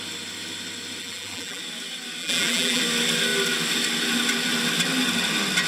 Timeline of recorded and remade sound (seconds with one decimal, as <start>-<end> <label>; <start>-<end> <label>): 0.0-1.0 recorded; 1.0-1.6 remade; 1.6-2.2 recorded; 2.2-2.8 remade; 2.8-5.7 recorded